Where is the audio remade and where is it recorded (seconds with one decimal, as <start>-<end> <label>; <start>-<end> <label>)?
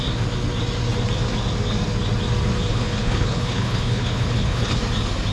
0.0-2.7 recorded; 2.7-4.8 remade; 4.8-5.3 recorded